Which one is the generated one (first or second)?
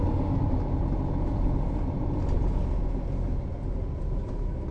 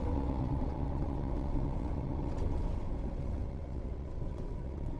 second